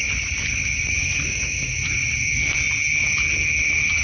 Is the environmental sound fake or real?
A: real